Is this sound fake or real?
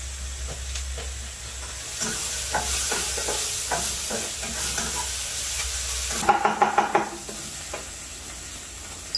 real